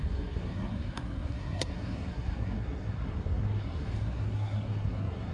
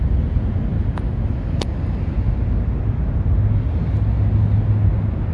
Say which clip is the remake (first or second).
first